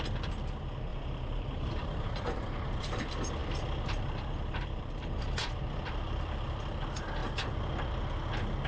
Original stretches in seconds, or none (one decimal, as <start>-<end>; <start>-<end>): 0.0-0.9; 3.0-3.4; 5.6-8.7